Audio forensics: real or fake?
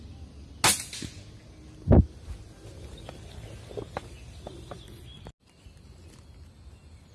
real